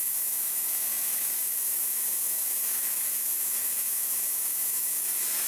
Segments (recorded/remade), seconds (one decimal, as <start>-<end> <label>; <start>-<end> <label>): 0.0-5.5 remade